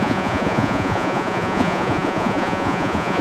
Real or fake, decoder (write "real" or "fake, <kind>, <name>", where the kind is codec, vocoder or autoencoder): fake, vocoder, Vocos